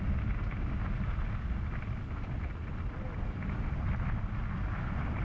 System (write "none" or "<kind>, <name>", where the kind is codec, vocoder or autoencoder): none